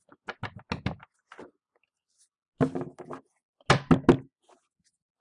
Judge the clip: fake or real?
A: real